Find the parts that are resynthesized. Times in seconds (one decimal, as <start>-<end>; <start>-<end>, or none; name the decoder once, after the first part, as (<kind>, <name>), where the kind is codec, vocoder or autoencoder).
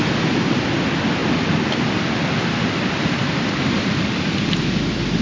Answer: 1.2-4.3 (vocoder, BigVGAN v2)